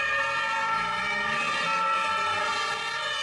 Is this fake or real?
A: real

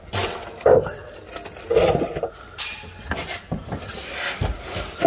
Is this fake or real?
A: real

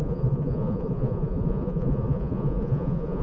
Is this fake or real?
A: fake